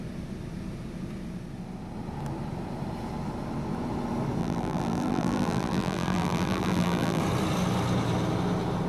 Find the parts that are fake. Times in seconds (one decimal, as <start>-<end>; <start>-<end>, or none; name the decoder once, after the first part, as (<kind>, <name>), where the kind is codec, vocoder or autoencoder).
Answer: 4.4-7.2 (vocoder, BigVGAN v2)